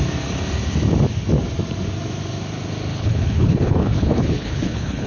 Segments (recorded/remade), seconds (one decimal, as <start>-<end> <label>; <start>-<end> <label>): 0.0-2.9 recorded; 2.9-5.1 remade